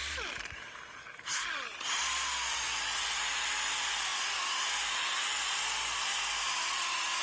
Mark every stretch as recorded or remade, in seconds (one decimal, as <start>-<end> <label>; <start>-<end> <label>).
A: 0.0-7.2 recorded